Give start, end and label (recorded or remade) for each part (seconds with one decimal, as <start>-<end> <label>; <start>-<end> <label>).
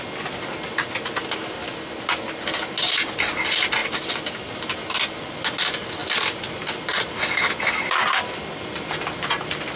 0.0-3.8 recorded; 3.8-4.5 remade; 4.5-6.0 recorded; 6.0-9.8 remade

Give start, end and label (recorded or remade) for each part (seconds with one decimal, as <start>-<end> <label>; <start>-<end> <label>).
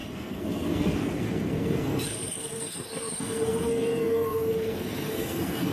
0.0-5.7 remade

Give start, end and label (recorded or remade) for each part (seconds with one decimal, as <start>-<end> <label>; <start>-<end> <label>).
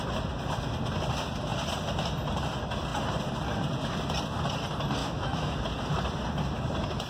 0.0-5.0 recorded; 5.0-5.6 remade; 5.6-7.1 recorded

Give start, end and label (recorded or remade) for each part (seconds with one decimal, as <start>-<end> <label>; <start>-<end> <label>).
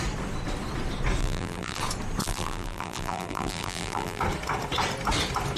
0.0-1.2 recorded; 1.2-1.8 remade; 1.8-2.2 recorded; 2.2-4.2 remade; 4.2-5.6 recorded